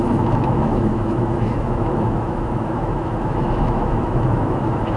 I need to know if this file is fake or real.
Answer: fake